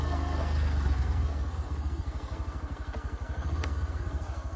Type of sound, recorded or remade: remade